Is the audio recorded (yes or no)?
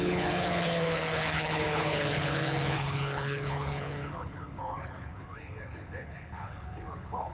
no